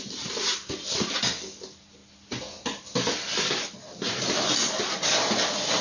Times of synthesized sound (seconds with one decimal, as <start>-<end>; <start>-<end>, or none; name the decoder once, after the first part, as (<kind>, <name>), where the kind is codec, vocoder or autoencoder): none